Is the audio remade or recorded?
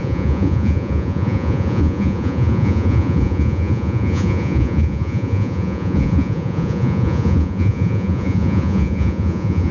remade